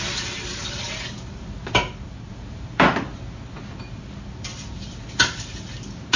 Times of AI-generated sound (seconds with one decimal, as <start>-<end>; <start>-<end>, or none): none